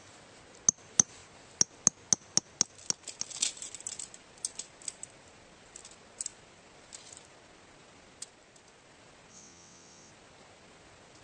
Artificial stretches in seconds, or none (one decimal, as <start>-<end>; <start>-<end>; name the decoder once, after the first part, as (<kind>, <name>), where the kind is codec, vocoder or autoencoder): 9.3-10.1 (vocoder, WaveNeXt)